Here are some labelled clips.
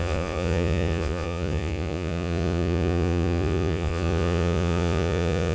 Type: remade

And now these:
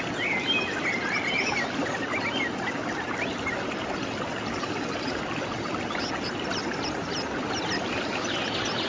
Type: recorded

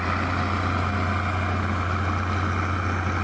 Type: recorded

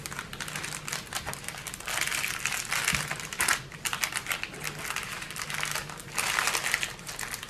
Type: recorded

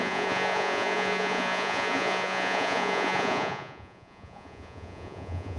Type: remade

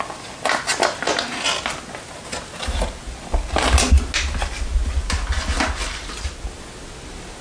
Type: recorded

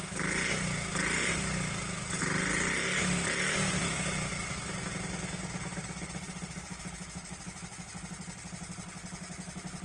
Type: recorded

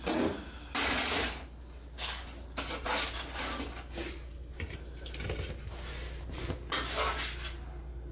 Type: recorded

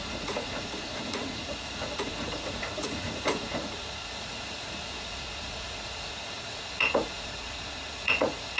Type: remade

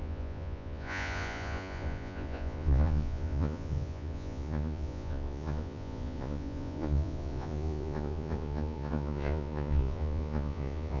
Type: remade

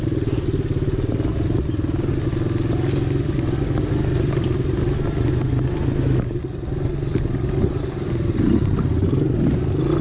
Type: recorded